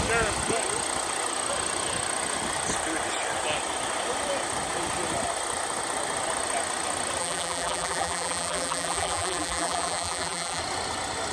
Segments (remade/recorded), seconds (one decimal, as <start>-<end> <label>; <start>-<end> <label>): 0.0-7.2 recorded; 7.2-10.6 remade; 10.6-11.3 recorded